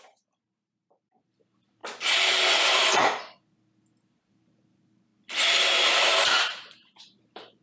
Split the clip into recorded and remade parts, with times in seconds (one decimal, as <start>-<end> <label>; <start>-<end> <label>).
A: 0.0-1.8 remade; 1.8-4.0 recorded; 4.0-5.1 remade; 5.1-5.9 recorded; 5.9-7.6 remade